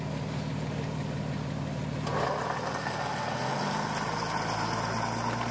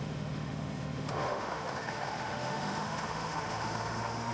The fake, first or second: second